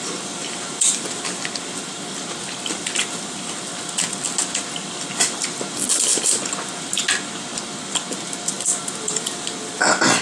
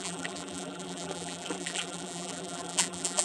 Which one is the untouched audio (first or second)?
first